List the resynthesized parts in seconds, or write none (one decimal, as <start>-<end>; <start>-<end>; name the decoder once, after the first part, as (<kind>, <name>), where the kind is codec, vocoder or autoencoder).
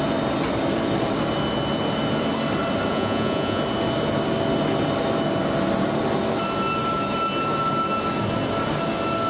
2.9-3.6 (vocoder, Vocos)